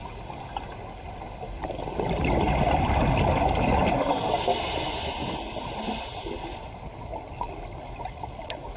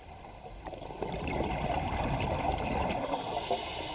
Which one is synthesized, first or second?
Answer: second